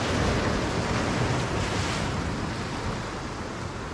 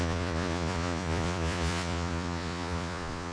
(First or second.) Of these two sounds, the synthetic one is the second